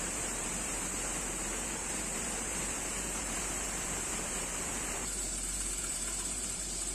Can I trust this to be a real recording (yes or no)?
no